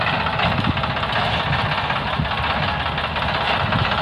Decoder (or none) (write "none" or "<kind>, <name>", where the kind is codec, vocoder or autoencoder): none